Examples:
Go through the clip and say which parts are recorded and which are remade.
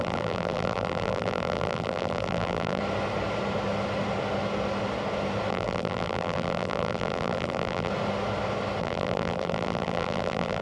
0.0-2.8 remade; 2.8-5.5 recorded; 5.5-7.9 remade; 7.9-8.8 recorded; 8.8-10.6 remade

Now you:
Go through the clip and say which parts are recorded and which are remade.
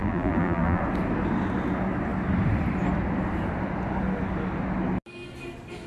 0.0-0.8 remade; 0.8-5.9 recorded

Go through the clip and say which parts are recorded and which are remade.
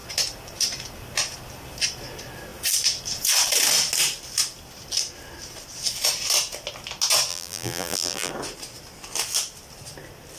0.0-7.3 recorded; 7.3-8.3 remade; 8.3-10.4 recorded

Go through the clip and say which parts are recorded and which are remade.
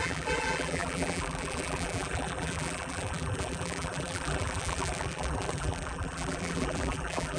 0.0-7.4 remade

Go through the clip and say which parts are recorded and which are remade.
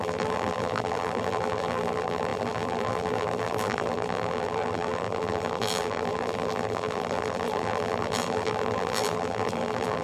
0.0-10.0 remade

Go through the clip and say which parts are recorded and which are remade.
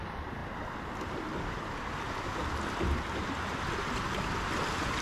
0.0-5.0 recorded